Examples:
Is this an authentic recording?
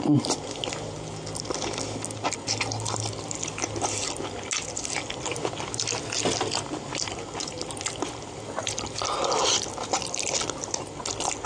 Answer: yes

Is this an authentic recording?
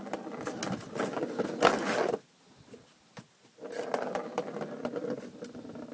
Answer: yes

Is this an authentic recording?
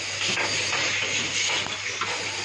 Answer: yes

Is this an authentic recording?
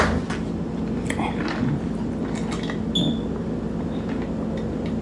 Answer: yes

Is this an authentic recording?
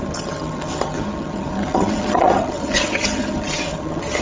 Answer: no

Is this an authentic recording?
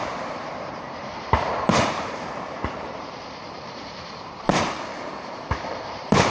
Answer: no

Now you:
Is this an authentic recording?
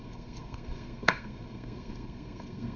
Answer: no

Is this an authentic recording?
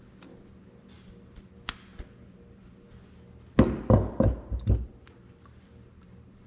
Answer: yes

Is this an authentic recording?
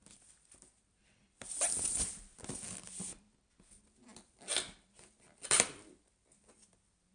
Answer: yes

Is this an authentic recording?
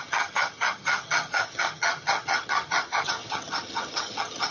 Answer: no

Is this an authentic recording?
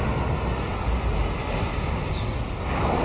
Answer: yes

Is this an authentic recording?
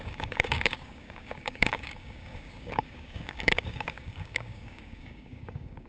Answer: no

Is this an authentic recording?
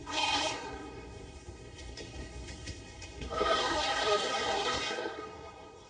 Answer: no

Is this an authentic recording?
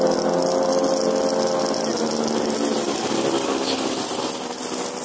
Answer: yes